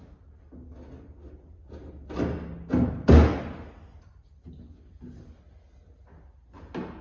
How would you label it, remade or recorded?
recorded